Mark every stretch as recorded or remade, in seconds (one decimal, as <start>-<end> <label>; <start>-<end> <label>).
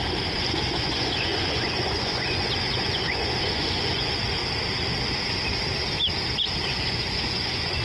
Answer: 0.0-4.4 remade; 4.4-6.7 recorded; 6.7-7.8 remade